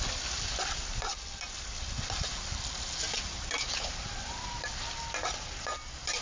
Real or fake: real